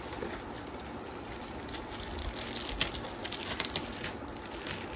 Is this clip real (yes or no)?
yes